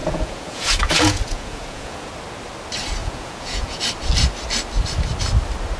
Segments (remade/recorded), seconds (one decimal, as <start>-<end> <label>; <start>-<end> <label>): 0.0-2.1 remade; 2.1-3.0 recorded; 3.0-3.8 remade; 3.8-5.8 recorded